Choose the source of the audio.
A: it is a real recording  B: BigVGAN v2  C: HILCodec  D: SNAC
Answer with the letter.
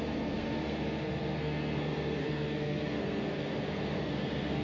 D